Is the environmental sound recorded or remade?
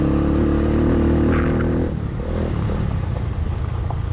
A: recorded